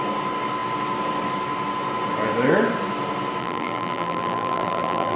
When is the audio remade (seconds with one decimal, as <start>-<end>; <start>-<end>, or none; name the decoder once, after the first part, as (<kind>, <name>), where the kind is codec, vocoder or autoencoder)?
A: 3.4-5.2 (vocoder, BigVGAN v2)